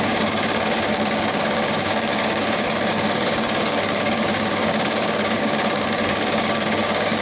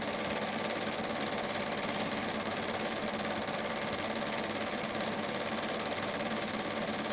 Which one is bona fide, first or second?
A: second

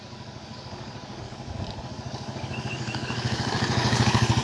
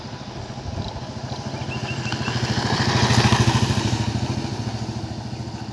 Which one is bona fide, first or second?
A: second